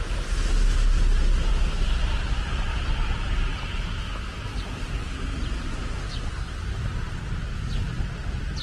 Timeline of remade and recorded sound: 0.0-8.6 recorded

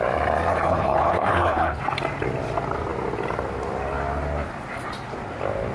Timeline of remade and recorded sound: 0.0-0.5 recorded; 0.5-1.8 remade; 1.8-5.7 recorded

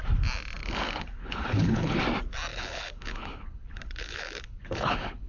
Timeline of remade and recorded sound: 0.0-0.6 recorded; 0.6-2.0 remade; 2.0-2.5 recorded; 2.5-5.3 remade

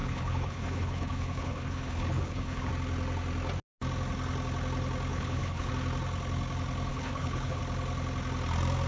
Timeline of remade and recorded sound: 0.0-2.7 remade; 2.7-5.1 recorded; 5.1-5.7 remade; 5.7-6.9 recorded; 6.9-7.6 remade; 7.6-8.9 recorded

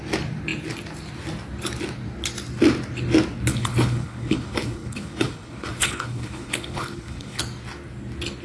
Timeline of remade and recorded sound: 0.0-3.5 recorded; 3.5-7.4 remade; 7.4-8.4 recorded

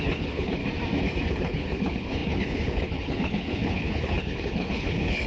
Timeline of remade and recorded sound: 0.0-0.6 remade; 0.6-1.3 recorded; 1.3-5.3 remade